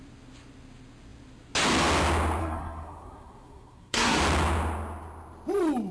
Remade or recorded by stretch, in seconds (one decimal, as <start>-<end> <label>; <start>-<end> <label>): 0.0-2.4 recorded; 2.4-4.2 remade; 4.2-5.9 recorded